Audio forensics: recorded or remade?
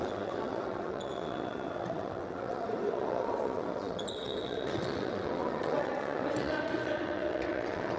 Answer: remade